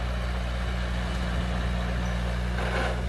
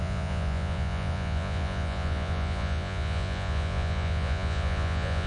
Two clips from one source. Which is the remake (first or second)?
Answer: second